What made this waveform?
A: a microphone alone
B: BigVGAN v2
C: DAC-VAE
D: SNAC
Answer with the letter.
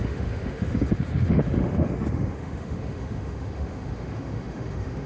C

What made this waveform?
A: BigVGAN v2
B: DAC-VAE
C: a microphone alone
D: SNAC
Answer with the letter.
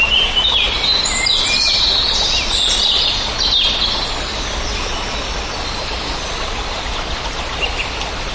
C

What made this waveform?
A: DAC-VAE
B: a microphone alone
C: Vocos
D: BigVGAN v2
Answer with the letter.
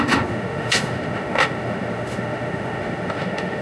A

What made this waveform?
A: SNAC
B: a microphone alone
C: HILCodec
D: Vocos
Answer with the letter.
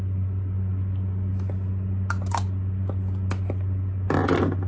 B